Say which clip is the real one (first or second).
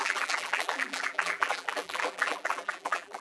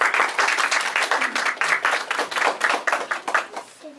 second